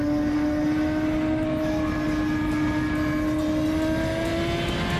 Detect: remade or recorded recorded